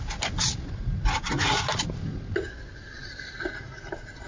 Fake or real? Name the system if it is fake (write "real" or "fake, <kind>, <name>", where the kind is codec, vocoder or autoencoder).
real